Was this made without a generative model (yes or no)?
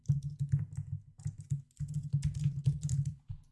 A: yes